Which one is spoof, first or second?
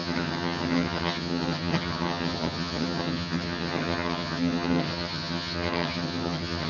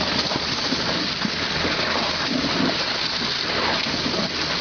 first